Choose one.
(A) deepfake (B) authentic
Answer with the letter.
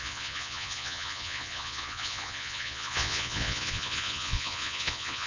A